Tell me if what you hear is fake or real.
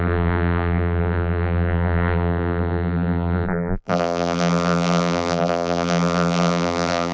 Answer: fake